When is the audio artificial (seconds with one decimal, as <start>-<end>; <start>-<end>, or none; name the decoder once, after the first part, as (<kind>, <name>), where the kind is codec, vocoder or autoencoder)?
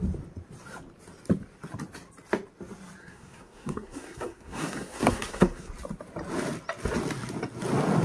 3.0-5.7 (codec, SNAC)